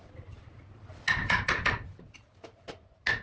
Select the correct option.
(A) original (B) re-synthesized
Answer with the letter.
A